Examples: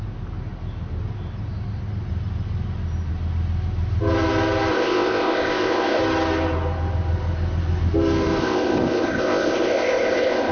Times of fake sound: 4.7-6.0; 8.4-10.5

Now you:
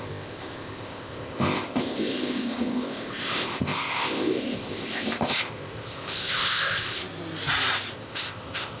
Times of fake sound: 0.0-7.0; 7.9-8.8

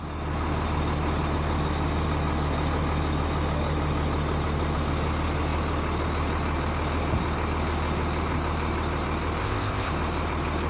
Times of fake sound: 9.4-9.9

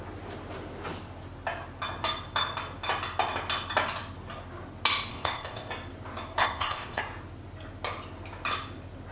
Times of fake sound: 5.1-5.7; 6.4-7.0

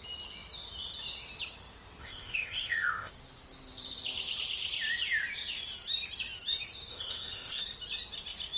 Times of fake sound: 2.0-3.1; 6.9-7.6

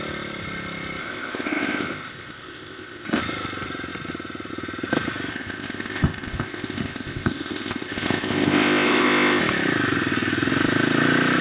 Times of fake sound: 1.0-3.2; 5.3-9.4